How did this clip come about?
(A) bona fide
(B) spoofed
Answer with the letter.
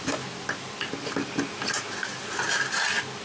A